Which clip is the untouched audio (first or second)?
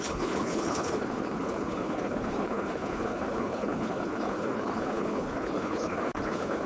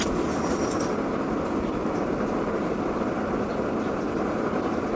second